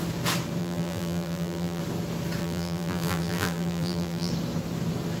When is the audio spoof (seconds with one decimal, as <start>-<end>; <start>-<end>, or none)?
0.6-1.8; 2.4-4.3